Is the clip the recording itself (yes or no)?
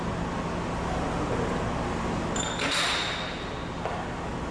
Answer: yes